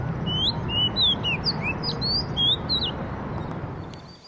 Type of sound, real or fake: real